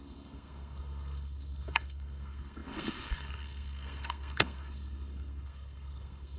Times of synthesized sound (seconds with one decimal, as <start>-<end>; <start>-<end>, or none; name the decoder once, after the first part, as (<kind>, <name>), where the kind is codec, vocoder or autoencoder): 0.0-6.4 (codec, SNAC)